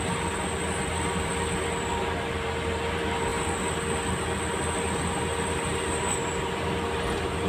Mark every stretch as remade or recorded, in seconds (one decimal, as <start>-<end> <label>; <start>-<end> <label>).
0.0-7.5 recorded